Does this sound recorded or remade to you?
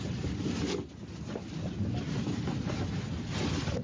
recorded